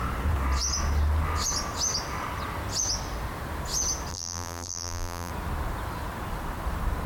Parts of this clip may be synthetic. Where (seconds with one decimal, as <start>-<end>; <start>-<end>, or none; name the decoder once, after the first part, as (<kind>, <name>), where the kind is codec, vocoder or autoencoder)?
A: 4.1-5.3 (vocoder, BigVGAN v2)